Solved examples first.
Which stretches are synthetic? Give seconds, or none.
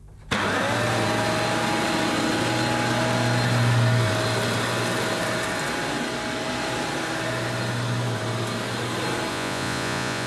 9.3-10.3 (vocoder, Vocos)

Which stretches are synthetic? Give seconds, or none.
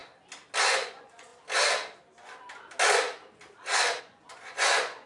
0.6-1.3 (vocoder, Vocos); 4.0-5.1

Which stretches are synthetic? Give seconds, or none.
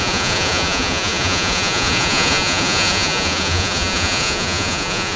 0.0-5.2 (vocoder, Vocos)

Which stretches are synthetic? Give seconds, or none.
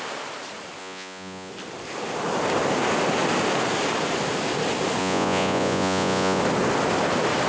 0.8-1.5 (vocoder, Vocos); 5.0-6.4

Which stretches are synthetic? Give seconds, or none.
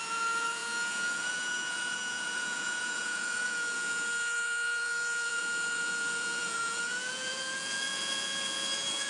0.0-9.1 (vocoder, Vocos)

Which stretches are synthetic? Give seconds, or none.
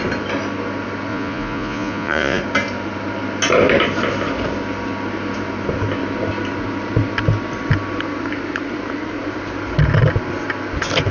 1.1-2.4 (vocoder, Vocos)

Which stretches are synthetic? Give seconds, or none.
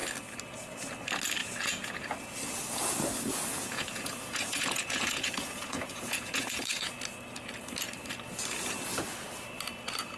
1.4-2.1 (vocoder, Vocos); 3.5-6.9